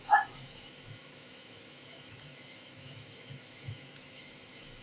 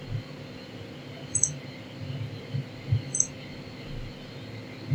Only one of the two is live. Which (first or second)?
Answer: second